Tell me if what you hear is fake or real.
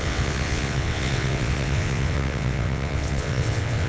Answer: fake